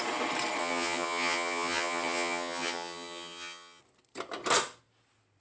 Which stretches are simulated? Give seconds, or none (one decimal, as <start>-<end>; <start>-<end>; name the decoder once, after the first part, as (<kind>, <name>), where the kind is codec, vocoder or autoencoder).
0.6-3.8 (vocoder, HiFi-GAN)